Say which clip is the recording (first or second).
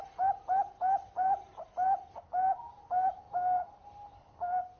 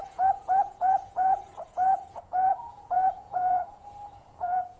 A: first